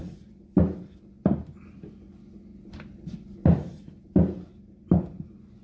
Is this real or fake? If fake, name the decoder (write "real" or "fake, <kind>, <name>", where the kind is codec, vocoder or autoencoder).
real